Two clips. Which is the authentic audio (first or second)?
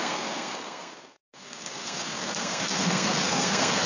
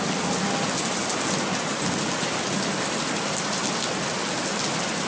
second